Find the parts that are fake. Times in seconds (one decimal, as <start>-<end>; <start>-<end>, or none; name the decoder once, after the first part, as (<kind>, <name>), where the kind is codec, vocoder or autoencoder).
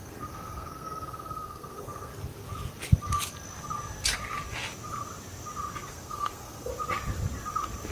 0.0-2.1 (codec, SNAC); 5.9-6.7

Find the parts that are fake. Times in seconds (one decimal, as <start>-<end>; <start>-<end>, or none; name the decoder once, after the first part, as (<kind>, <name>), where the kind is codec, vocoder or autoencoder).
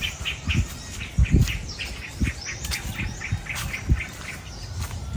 none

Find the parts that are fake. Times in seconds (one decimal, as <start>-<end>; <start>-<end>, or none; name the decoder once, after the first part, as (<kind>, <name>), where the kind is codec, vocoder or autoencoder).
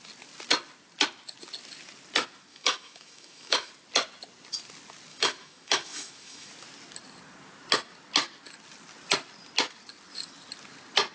2.5-3.7 (autoencoder, DAC-VAE); 5.1-6.5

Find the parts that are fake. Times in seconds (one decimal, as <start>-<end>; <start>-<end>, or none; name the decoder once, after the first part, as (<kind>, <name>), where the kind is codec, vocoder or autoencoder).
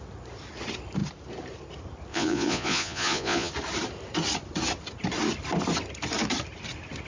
2.1-3.5 (vocoder, Vocos)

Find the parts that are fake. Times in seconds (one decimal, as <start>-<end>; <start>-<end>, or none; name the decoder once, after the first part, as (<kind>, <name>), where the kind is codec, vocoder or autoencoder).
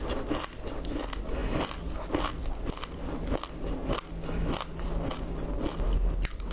none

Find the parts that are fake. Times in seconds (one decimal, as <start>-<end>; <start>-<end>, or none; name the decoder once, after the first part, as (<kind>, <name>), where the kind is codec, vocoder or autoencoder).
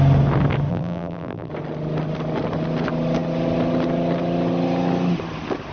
0.7-1.5 (vocoder, BigVGAN v2)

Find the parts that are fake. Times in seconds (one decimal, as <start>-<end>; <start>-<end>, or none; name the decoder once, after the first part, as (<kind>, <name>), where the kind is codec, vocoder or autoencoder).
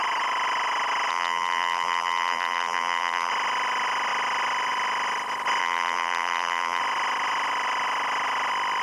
1.1-3.3 (vocoder, BigVGAN v2); 5.6-6.8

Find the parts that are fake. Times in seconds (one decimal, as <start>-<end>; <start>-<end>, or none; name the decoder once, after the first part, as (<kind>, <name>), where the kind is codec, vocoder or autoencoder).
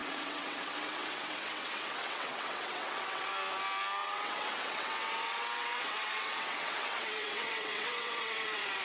0.0-3.3 (vocoder, WaveNeXt); 4.0-8.8